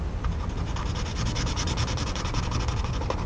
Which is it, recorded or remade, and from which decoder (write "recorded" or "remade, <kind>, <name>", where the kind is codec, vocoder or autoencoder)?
recorded